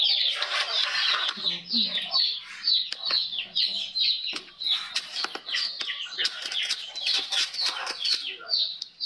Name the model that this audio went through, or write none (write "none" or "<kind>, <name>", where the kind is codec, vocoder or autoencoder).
none